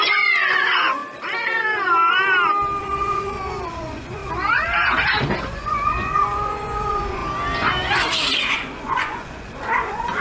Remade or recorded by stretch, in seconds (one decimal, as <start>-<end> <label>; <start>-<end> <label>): 0.0-1.0 remade; 1.0-2.8 recorded; 2.8-4.2 remade; 4.2-5.4 recorded; 5.4-7.2 remade; 7.2-8.5 recorded; 8.5-10.2 remade